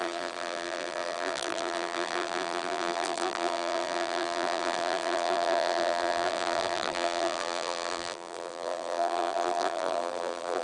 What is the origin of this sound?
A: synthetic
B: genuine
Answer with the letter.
A